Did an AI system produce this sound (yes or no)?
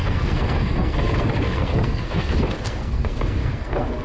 yes